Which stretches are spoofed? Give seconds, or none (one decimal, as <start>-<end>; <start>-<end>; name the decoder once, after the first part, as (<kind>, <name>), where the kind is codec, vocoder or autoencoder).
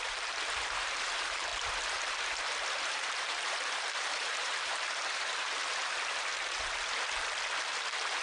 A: 0.0-1.5 (vocoder, BigVGAN v2); 2.9-6.3